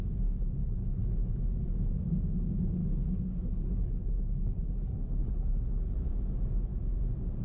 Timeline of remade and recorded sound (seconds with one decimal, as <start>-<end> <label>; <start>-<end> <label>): 0.0-0.6 recorded; 0.6-1.3 remade; 1.3-2.8 recorded; 2.8-5.9 remade; 5.9-7.4 recorded